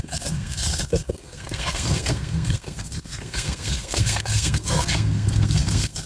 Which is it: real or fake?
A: fake